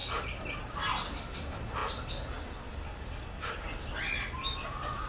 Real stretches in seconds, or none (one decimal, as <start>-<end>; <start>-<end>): 0.0-5.1